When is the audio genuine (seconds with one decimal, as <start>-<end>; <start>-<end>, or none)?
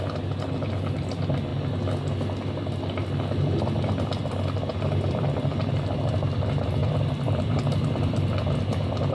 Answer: 0.0-6.8; 8.4-9.1